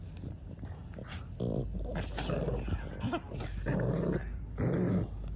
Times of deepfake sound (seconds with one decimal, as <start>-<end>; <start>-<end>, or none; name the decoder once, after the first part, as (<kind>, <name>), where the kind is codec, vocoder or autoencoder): none